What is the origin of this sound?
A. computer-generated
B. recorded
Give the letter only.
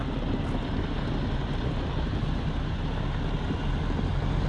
B